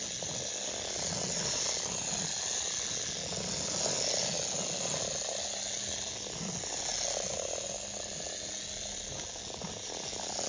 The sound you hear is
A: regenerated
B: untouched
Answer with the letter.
B